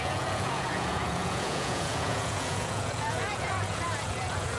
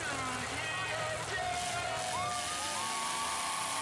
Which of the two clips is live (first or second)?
second